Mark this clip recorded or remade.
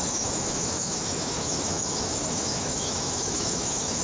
remade